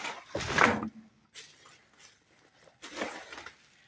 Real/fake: real